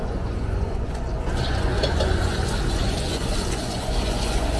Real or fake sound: fake